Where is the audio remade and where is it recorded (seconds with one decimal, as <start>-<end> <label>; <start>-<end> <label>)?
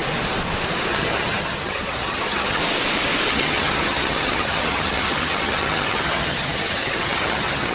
0.0-0.9 recorded; 0.9-2.6 remade; 2.6-3.3 recorded; 3.3-7.7 remade